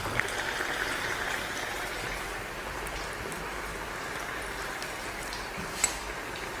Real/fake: real